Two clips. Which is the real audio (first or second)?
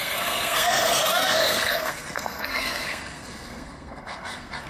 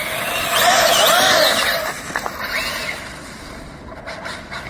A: second